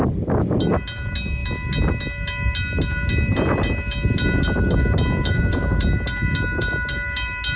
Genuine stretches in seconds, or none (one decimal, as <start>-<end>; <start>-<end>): 0.0-7.6